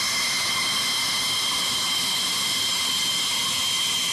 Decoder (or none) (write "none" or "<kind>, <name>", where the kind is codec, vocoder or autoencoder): none